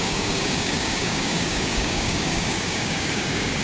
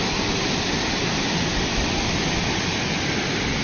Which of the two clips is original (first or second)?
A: second